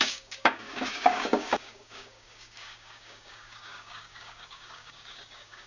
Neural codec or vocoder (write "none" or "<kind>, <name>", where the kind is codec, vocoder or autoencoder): codec, DAC